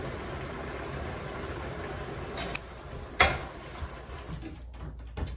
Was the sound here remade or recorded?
recorded